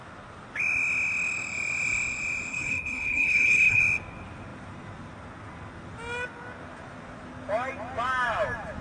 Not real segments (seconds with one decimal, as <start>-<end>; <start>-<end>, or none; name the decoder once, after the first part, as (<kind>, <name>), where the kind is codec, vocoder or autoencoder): 2.5-3.8 (codec, HILCodec)